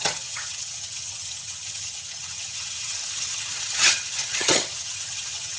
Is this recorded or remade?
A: remade